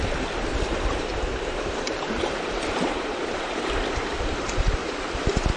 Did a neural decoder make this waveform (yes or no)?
yes